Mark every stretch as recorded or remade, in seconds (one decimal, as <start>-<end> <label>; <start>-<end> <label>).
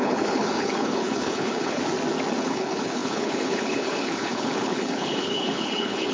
0.0-1.8 remade; 1.8-2.4 recorded; 2.4-6.1 remade